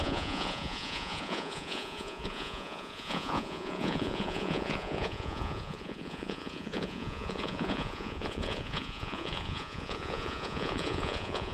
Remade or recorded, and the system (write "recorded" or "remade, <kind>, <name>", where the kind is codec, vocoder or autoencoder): remade, vocoder, Vocos